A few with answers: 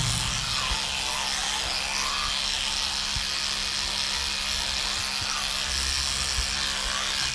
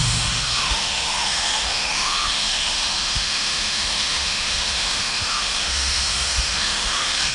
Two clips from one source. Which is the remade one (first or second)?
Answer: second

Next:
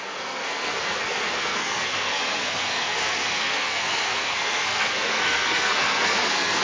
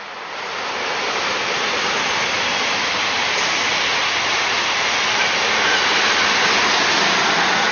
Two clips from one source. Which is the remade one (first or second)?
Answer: first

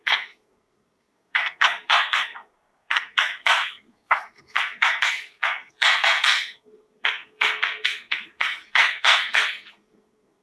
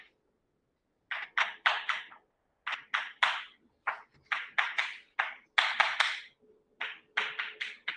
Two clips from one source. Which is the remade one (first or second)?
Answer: first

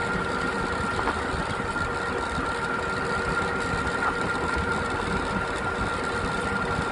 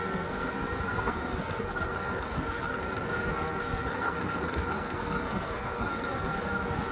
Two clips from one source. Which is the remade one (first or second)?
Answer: second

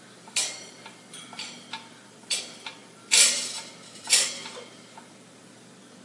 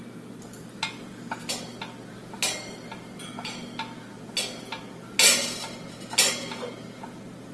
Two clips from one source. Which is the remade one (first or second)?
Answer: first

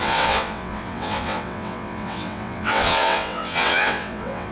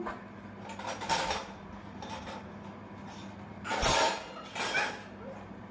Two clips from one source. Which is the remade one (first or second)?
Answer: first